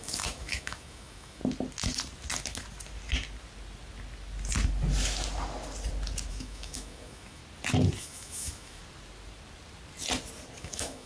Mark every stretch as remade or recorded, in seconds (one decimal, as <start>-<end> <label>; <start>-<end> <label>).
0.0-1.4 remade; 1.4-6.3 recorded; 6.3-7.4 remade; 7.4-8.0 recorded; 8.0-8.8 remade; 8.8-10.6 recorded; 10.6-11.1 remade